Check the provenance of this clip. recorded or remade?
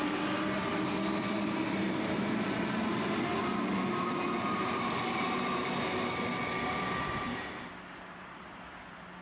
recorded